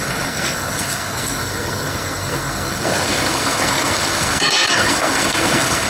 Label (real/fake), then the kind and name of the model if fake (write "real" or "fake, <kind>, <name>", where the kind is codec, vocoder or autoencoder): fake, codec, SNAC